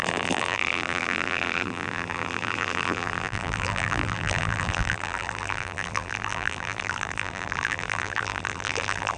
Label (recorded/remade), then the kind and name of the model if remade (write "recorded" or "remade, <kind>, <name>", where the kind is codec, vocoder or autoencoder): remade, vocoder, BigVGAN v2